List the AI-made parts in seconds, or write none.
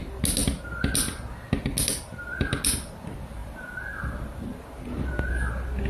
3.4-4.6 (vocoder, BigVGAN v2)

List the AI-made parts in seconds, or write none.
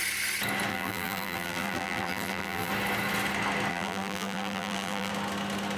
0.7-2.7 (vocoder, BigVGAN v2); 3.7-5.1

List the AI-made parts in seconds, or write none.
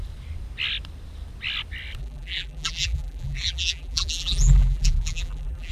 2.0-5.7 (vocoder, BigVGAN v2)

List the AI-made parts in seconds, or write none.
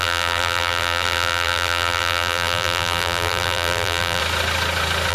0.0-4.2 (vocoder, BigVGAN v2)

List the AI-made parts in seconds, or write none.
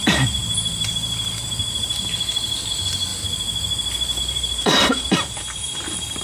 0.0-3.1 (vocoder, BigVGAN v2); 4.2-6.2